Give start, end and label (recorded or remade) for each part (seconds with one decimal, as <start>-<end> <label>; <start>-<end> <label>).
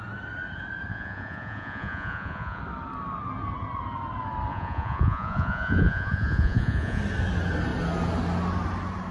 0.0-0.9 recorded; 0.9-2.6 remade; 2.6-4.5 recorded; 4.5-7.0 remade; 7.0-9.1 recorded